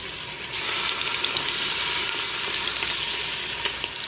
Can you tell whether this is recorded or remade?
recorded